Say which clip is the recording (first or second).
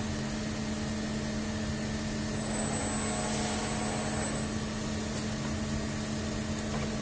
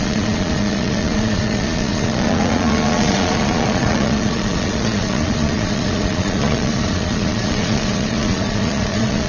first